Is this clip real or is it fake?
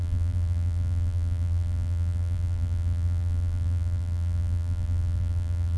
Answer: fake